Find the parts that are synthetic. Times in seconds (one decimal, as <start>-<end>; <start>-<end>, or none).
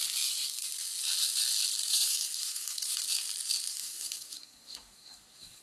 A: 1.9-3.0; 3.7-5.6